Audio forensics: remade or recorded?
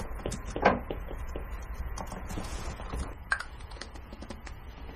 remade